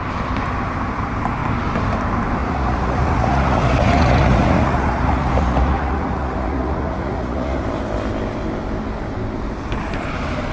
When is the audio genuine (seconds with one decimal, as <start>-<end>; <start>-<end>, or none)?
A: 0.0-2.4; 7.6-10.5